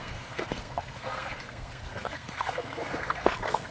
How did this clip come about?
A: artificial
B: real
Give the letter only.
A